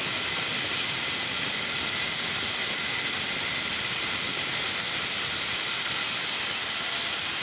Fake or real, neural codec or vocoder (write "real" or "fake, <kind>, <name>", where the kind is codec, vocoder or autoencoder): real